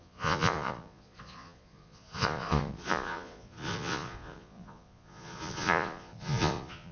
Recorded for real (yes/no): no